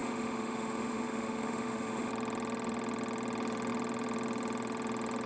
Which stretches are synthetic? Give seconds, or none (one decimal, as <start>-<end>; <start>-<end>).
0.0-2.1